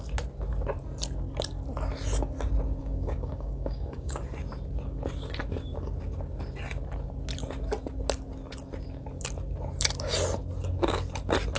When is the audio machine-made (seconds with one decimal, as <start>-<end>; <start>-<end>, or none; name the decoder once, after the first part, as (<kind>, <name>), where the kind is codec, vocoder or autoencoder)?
2.8-4.2 (codec, DAC)